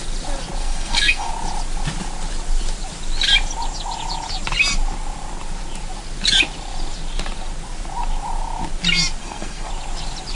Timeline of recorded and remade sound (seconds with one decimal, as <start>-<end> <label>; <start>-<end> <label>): 0.0-0.6 recorded; 0.6-1.3 remade; 1.3-9.2 recorded; 9.2-9.7 remade; 9.7-10.3 recorded